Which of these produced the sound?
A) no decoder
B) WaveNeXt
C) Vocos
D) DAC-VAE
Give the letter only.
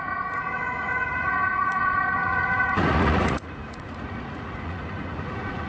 C